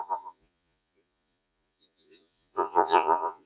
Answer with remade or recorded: remade